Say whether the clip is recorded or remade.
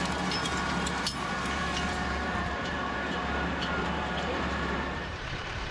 remade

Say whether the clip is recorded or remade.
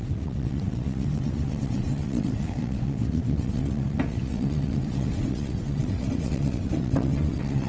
remade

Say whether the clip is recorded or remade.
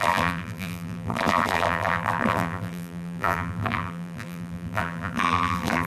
remade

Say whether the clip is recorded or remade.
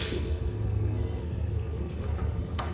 remade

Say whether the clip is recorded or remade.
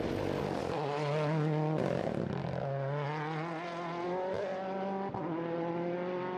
recorded